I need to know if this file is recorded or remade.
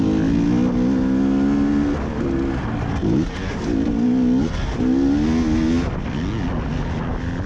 recorded